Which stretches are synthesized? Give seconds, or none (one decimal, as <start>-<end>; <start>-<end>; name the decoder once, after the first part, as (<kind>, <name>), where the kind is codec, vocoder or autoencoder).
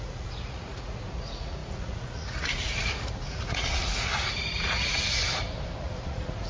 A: 0.0-5.2 (vocoder, Vocos); 5.8-6.5